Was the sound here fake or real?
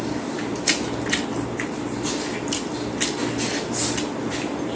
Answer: real